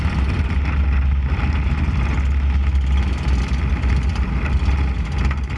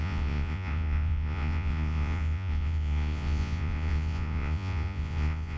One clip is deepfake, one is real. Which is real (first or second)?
first